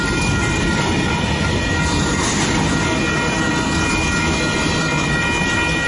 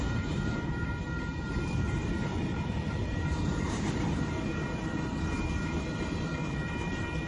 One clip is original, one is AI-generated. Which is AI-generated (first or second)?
second